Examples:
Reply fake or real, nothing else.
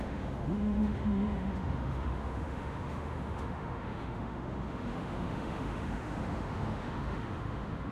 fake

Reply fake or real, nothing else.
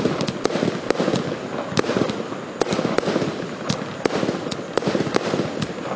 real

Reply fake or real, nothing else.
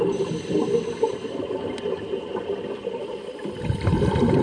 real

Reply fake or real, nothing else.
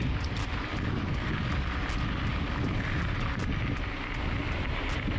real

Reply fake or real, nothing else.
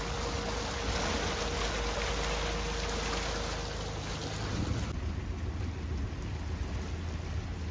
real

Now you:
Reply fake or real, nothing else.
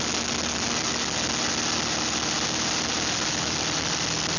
real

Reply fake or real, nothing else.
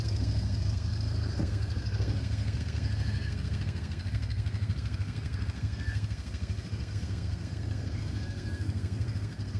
fake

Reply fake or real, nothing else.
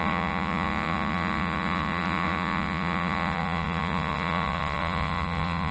fake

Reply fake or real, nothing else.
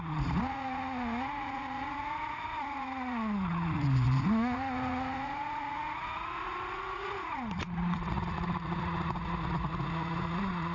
fake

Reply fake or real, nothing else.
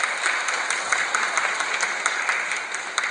real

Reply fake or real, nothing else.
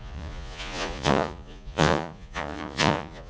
fake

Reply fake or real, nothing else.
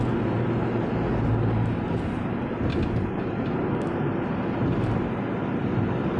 real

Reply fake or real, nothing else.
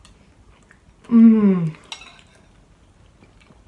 real